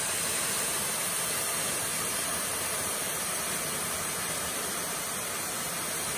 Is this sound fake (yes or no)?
no